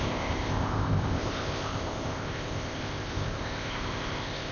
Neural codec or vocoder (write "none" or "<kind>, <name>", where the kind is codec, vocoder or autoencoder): codec, ZipCodec